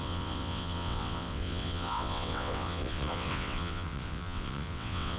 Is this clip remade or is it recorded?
remade